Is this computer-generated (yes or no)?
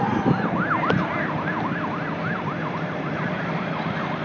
no